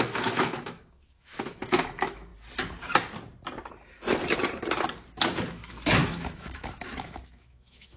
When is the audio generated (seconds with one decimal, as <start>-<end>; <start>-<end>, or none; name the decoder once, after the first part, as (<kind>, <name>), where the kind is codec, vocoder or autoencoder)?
0.0-2.3 (autoencoder, DAC-VAE); 5.5-8.0